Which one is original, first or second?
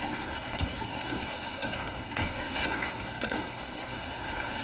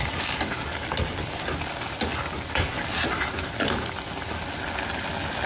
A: second